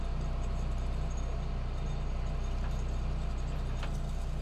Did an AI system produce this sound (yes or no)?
no